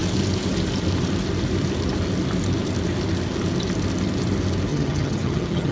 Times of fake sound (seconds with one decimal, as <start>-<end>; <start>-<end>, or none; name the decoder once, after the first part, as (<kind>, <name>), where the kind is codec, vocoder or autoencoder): 4.7-5.7 (vocoder, HiFi-GAN)